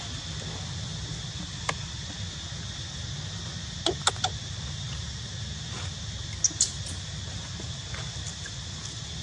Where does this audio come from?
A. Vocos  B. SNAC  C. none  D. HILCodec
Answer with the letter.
C